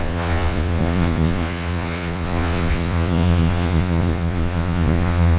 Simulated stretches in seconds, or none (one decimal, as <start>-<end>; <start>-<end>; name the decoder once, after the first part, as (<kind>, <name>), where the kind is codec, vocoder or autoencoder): 0.0-5.4 (vocoder, Vocos)